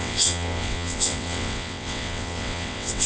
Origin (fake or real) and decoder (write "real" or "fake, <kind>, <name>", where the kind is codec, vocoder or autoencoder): fake, vocoder, WaveNeXt